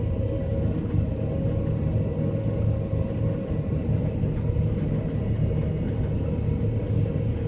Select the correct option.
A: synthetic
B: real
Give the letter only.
B